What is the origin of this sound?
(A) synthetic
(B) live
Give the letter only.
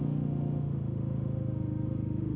A